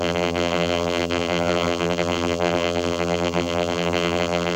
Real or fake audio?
fake